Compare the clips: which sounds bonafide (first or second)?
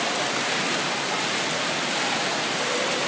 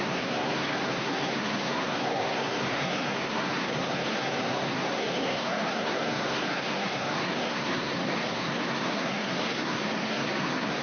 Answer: first